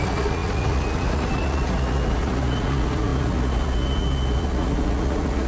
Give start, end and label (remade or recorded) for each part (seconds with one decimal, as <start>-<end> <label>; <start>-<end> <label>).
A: 0.0-5.5 remade